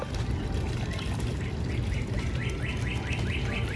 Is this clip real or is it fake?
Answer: real